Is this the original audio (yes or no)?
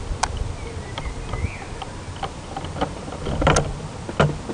yes